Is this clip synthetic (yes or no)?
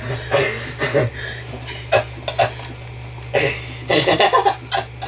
no